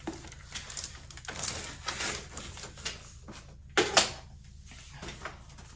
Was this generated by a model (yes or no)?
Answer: no